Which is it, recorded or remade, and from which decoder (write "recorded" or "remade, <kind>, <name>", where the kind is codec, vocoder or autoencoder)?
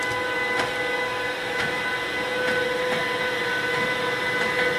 recorded